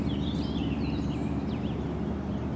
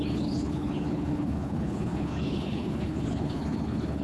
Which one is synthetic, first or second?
second